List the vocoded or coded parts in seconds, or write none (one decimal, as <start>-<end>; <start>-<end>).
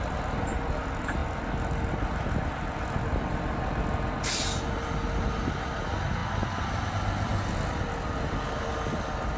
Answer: none